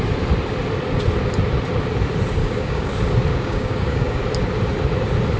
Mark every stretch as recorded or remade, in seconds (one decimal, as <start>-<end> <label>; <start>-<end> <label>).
0.0-2.4 recorded; 2.4-2.9 remade; 2.9-3.3 recorded; 3.3-4.2 remade; 4.2-5.4 recorded